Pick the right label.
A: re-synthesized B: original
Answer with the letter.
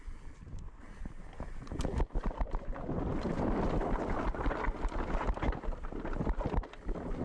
B